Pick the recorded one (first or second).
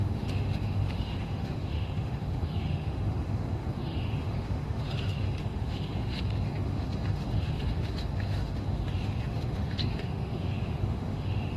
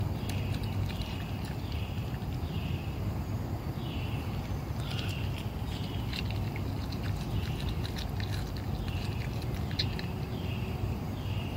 second